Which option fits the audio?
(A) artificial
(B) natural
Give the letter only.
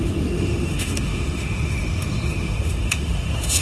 A